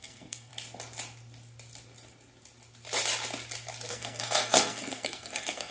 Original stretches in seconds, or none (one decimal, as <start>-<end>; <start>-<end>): 0.5-3.9